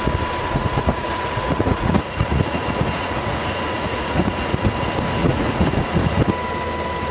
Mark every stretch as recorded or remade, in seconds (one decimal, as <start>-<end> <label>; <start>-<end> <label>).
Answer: 0.0-0.4 recorded; 0.4-4.7 remade; 4.7-5.2 recorded; 5.2-6.2 remade; 6.2-7.1 recorded